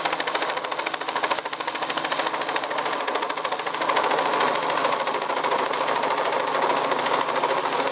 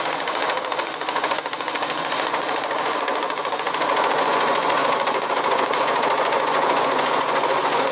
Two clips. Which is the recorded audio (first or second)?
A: first